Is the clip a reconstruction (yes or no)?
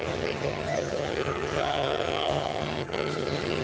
yes